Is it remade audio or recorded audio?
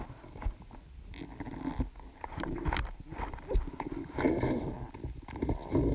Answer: recorded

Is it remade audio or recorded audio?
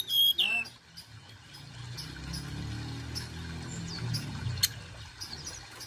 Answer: recorded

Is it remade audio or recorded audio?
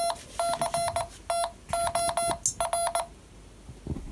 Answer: recorded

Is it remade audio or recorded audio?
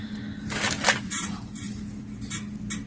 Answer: recorded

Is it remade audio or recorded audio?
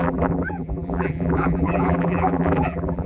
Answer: remade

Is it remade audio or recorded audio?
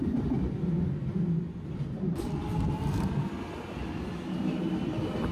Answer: recorded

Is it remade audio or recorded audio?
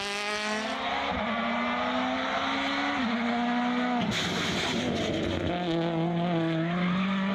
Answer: recorded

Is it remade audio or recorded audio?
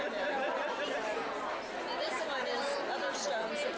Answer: recorded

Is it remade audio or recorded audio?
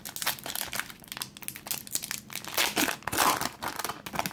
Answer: recorded